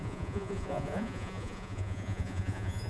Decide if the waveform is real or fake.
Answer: fake